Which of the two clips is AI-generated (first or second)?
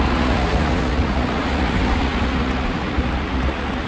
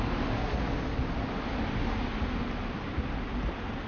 first